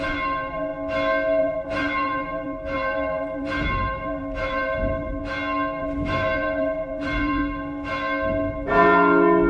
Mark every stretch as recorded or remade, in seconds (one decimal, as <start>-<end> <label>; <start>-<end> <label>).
0.0-0.7 remade; 0.7-1.4 recorded; 1.4-5.2 remade; 5.2-5.8 recorded; 5.8-7.4 remade; 7.4-9.5 recorded